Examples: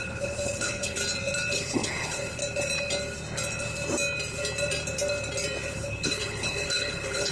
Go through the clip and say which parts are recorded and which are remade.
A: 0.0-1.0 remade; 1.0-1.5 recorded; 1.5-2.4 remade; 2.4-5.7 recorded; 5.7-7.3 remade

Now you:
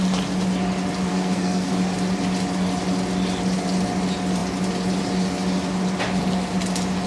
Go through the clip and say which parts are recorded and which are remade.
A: 0.0-1.1 recorded; 1.1-1.7 remade; 1.7-7.1 recorded

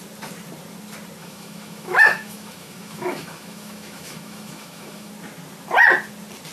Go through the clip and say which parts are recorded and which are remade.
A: 0.0-1.2 recorded; 1.2-5.1 remade; 5.1-6.5 recorded

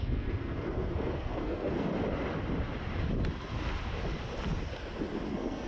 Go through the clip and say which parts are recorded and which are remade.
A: 0.0-1.9 remade; 1.9-5.3 recorded; 5.3-5.7 remade